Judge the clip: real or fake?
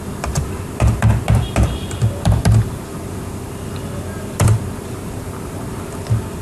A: fake